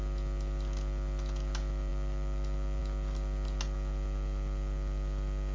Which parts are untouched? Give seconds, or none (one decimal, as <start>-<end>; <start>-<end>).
0.0-5.5